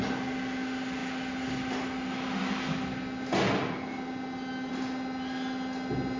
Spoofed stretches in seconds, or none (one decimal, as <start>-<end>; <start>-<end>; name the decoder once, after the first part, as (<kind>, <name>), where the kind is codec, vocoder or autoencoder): none